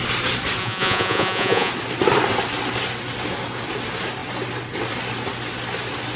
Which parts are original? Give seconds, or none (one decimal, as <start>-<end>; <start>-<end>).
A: 0.0-0.6; 1.7-6.2